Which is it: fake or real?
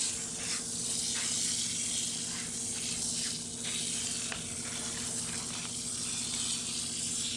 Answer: real